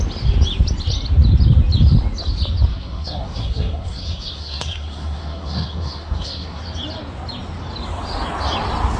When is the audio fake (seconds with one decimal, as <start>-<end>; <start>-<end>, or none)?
2.7-6.6